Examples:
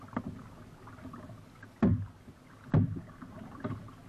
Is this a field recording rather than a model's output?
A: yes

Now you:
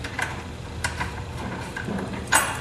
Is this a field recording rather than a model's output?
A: no